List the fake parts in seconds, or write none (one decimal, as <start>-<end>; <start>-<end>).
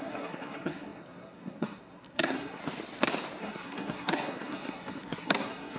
0.0-2.6; 3.4-5.8